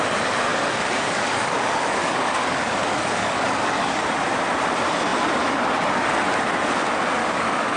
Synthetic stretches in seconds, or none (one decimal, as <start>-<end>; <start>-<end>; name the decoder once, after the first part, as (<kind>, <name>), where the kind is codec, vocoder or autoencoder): 0.5-4.0 (codec, DAC); 7.2-7.8